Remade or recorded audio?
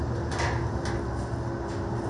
recorded